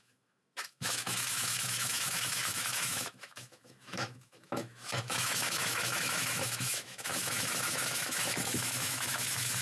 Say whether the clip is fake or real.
fake